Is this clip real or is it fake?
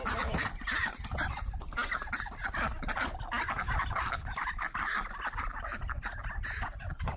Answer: real